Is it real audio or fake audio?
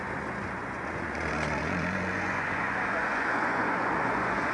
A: fake